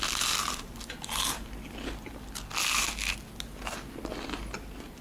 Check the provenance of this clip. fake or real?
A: real